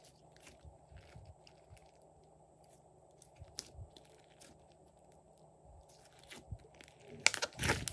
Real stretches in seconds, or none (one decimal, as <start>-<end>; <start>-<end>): 0.0-7.9

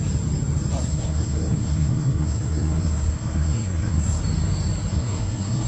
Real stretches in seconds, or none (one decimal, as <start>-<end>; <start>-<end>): 0.0-0.8; 4.2-4.9

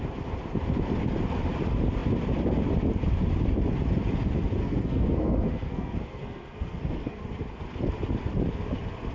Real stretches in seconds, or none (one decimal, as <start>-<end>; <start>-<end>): 0.0-4.6; 7.2-9.1